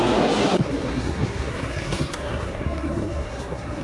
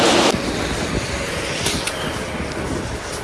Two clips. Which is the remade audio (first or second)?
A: first